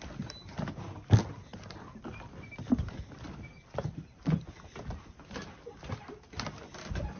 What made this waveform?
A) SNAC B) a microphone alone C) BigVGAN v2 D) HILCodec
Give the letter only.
B